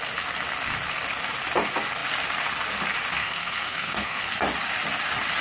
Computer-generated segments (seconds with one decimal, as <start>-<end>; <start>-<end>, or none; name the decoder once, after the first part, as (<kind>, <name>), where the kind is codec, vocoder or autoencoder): 3.2-4.2 (codec, SNAC)